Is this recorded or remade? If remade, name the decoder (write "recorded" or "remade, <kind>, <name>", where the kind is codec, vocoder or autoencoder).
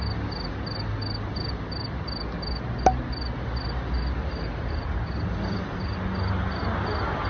recorded